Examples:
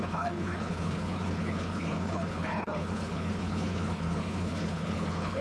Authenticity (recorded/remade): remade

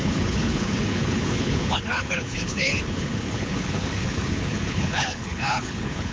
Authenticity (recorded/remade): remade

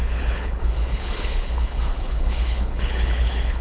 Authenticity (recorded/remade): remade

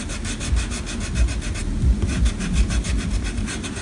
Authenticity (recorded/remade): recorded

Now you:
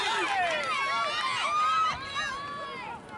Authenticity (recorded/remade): recorded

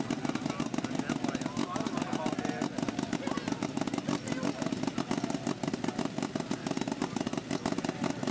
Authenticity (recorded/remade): recorded